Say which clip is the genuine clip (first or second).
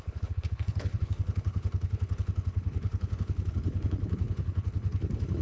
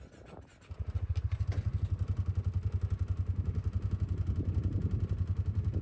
second